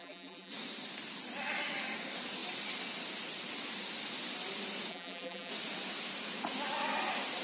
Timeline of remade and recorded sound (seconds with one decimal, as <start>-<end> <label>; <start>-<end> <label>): 0.0-0.5 remade; 0.5-4.9 recorded; 4.9-5.5 remade; 5.5-7.4 recorded